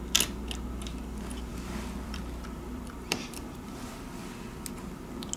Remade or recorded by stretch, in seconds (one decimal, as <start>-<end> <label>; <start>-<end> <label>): 0.0-1.5 recorded; 1.5-4.2 remade; 4.2-5.4 recorded